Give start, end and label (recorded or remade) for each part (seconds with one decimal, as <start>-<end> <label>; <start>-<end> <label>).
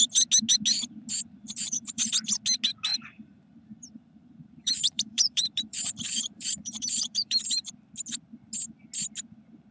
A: 0.0-1.4 recorded; 1.4-2.1 remade; 2.1-2.9 recorded; 2.9-7.7 remade; 7.7-9.7 recorded